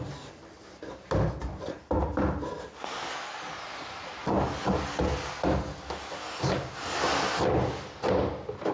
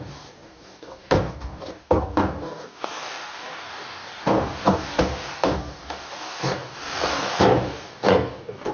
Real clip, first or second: first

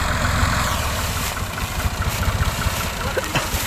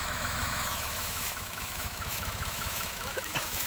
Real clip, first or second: first